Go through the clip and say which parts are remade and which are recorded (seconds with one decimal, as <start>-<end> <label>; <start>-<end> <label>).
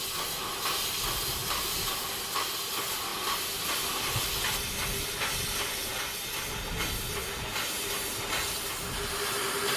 0.0-1.3 recorded; 1.3-2.1 remade; 2.1-9.8 recorded